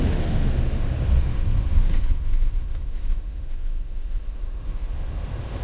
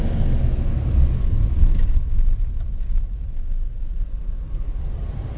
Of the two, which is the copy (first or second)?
first